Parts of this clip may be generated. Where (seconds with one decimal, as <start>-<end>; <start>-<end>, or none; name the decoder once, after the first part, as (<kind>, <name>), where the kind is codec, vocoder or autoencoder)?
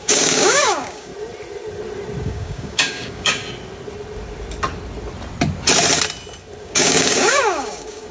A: 0.0-1.1 (codec, DAC); 2.2-3.4; 6.6-8.1